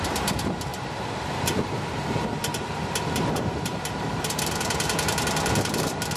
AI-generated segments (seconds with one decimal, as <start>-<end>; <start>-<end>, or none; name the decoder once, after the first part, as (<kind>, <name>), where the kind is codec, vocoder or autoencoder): 0.0-6.2 (vocoder, BigVGAN v2)